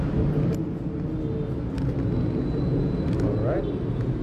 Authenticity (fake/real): real